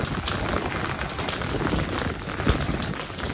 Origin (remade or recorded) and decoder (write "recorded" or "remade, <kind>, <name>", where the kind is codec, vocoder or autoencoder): recorded